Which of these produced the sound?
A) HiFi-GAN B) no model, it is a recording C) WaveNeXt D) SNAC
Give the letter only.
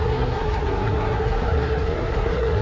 D